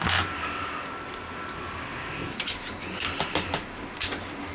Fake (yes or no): no